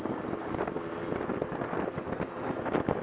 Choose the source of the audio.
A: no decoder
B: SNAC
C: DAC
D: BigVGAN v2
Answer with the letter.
A